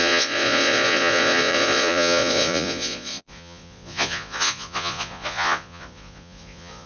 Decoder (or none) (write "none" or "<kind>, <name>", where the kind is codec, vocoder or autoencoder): vocoder, Vocos